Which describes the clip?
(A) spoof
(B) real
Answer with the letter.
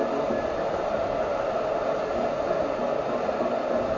B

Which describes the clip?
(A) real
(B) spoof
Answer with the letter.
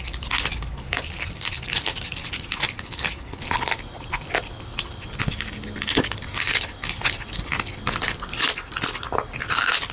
A